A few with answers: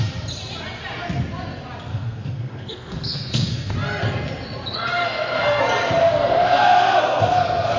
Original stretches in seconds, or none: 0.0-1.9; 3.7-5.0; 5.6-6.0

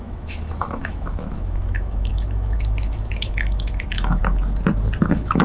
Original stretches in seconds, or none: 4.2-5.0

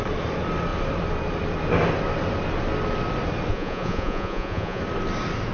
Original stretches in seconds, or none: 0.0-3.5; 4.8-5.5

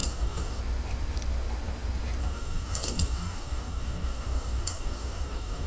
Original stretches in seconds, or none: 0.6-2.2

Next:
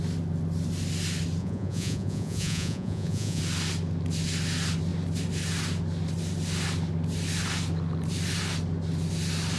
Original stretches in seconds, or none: 0.0-1.4; 3.4-9.6